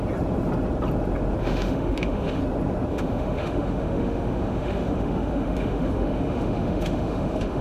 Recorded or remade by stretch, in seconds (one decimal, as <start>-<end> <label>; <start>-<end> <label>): 0.0-1.4 recorded; 1.4-2.4 remade; 2.4-2.9 recorded; 2.9-7.6 remade